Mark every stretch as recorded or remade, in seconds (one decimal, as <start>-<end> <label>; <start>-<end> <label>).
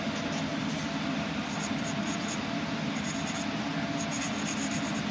0.0-0.6 recorded; 0.6-3.7 remade; 3.7-5.1 recorded